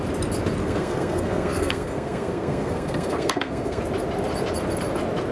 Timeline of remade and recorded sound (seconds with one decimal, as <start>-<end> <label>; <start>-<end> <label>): 0.0-0.6 recorded; 0.6-3.8 remade; 3.8-5.3 recorded